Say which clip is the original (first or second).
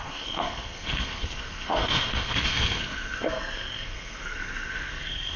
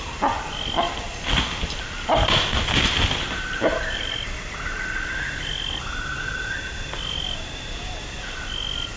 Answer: second